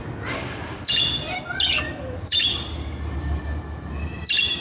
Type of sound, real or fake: real